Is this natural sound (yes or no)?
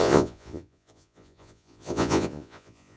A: no